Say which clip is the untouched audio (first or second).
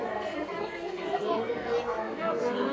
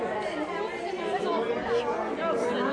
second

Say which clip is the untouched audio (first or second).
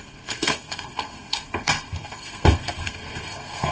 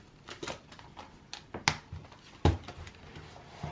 second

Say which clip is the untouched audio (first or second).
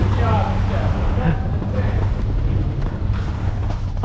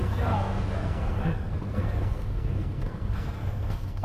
first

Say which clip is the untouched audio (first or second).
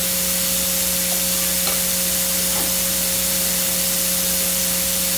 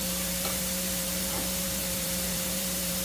first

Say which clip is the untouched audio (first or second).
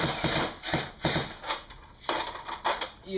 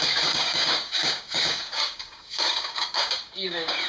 first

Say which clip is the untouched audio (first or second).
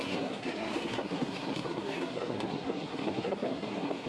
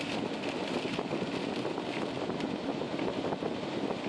second